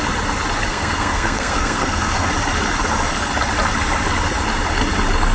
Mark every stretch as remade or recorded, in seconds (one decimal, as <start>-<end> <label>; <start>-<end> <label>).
0.0-0.7 recorded; 0.7-2.3 remade; 2.3-5.3 recorded